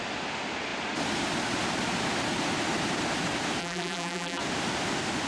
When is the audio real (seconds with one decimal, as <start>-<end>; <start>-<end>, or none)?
0.0-3.6; 4.4-5.3